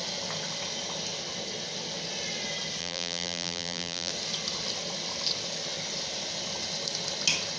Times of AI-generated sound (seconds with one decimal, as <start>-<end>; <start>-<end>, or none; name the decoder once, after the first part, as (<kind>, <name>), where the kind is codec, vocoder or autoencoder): 2.8-4.1 (vocoder, BigVGAN v2)